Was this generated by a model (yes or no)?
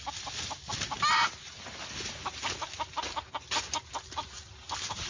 no